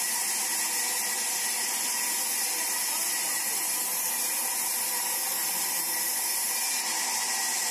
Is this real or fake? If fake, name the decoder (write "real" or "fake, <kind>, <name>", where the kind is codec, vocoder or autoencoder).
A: real